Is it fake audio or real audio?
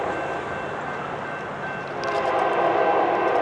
real